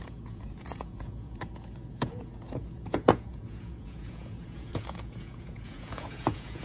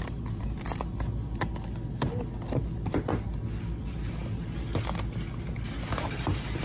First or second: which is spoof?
first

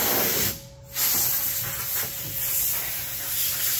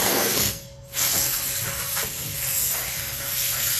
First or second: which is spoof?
second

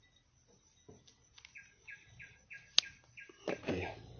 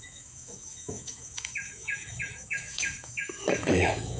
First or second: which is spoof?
second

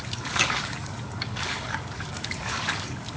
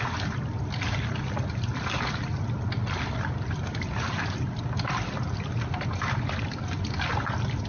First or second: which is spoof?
first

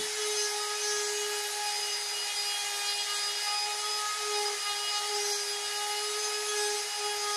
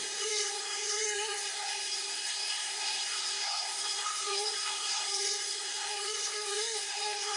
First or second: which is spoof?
second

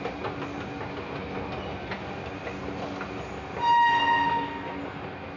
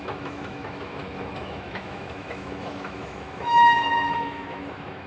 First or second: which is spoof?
second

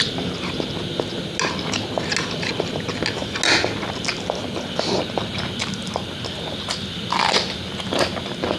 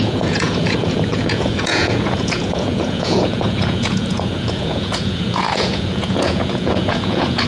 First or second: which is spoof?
second